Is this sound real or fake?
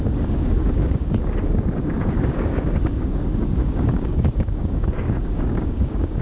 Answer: fake